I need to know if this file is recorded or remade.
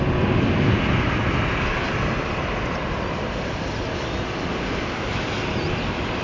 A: recorded